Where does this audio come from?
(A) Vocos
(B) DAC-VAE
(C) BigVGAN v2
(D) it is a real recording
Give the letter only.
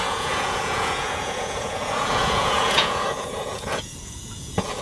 A